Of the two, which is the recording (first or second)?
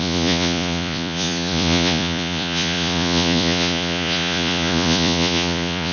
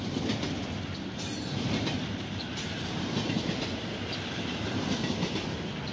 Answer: second